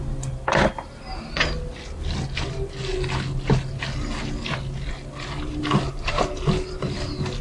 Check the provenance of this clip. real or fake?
real